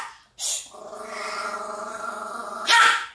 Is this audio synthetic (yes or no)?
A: no